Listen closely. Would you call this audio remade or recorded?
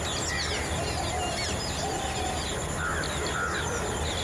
recorded